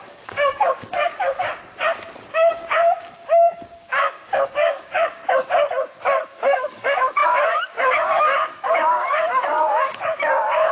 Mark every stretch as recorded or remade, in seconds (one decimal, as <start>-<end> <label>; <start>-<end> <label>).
0.0-1.5 remade; 1.5-2.5 recorded; 2.5-5.2 remade; 5.2-6.2 recorded; 6.2-10.7 remade

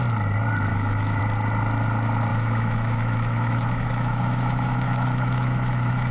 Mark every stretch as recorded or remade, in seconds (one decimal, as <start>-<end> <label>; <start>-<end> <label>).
0.0-0.7 recorded; 0.7-1.2 remade; 1.2-2.3 recorded; 2.3-6.1 remade